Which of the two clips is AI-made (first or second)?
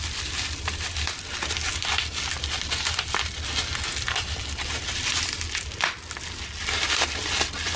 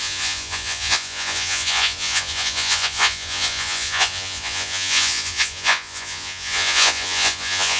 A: second